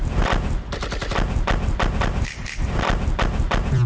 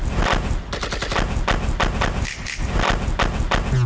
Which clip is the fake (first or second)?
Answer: first